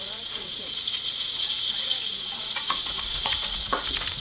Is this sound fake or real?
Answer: fake